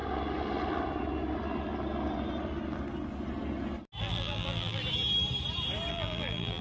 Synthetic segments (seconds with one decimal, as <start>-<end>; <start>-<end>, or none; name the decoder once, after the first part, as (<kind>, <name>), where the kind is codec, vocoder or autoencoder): 4.0-4.8 (vocoder, BigVGAN v2); 5.9-6.6